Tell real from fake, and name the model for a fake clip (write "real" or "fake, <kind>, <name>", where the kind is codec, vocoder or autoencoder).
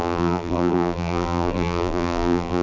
fake, vocoder, BigVGAN v2